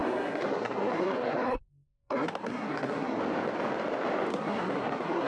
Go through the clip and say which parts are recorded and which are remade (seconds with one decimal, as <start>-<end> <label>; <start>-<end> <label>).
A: 0.0-3.2 remade; 3.2-4.3 recorded; 4.3-5.3 remade